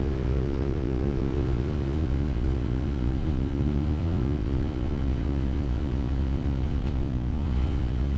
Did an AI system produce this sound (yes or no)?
yes